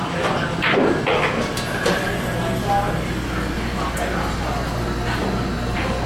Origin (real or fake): real